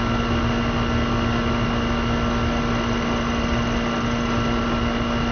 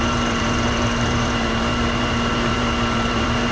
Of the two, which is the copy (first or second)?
second